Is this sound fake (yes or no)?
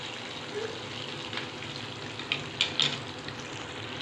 no